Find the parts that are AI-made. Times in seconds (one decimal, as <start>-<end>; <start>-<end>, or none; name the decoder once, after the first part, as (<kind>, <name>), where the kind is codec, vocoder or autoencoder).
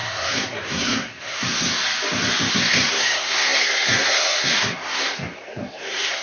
0.0-1.8 (codec, SNAC); 2.5-6.2